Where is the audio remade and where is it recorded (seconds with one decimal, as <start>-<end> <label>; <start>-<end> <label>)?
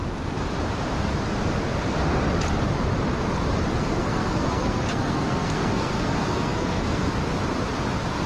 0.0-3.7 recorded; 3.7-7.1 remade; 7.1-8.3 recorded